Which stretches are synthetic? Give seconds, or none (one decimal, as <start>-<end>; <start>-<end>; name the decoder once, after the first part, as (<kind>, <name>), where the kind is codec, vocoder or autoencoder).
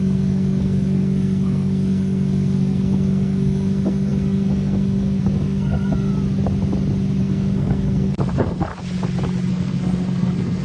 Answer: 0.0-6.1 (codec, SNAC); 7.2-8.7; 9.5-10.6